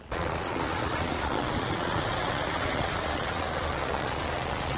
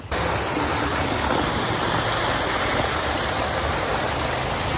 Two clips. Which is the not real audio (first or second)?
first